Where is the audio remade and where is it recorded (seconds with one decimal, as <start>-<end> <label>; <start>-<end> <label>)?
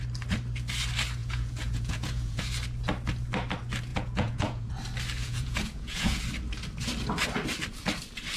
0.0-1.2 recorded; 1.2-2.4 remade; 2.4-3.9 recorded; 3.9-4.7 remade; 4.7-5.2 recorded; 5.2-6.2 remade; 6.2-8.4 recorded